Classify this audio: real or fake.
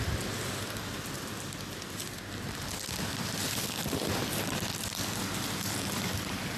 real